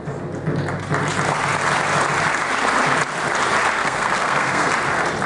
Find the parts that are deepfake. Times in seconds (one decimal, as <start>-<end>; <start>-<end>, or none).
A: 3.8-4.7